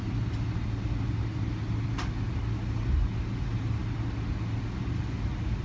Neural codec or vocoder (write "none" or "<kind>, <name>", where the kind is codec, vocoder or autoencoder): none